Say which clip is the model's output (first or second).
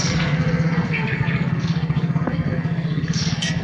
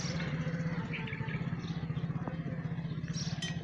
first